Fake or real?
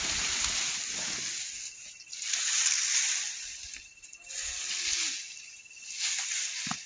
real